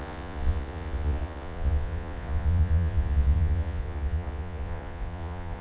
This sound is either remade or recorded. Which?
remade